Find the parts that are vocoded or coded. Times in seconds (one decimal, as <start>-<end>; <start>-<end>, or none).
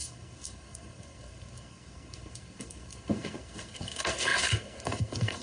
0.0-5.4